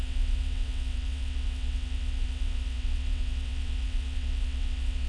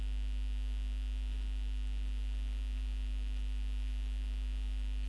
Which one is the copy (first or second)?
first